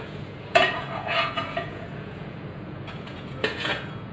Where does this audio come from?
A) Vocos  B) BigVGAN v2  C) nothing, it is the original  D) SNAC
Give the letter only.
A